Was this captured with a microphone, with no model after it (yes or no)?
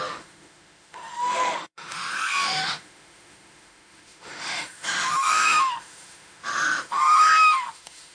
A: no